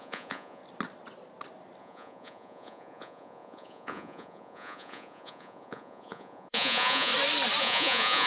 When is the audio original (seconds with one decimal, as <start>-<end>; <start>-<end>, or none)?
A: 0.6-1.8; 7.1-7.6